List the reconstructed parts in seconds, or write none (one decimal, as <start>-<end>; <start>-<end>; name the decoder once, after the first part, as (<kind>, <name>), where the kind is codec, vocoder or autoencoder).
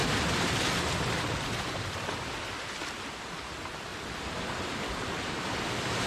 0.0-2.7 (vocoder, BigVGAN v2)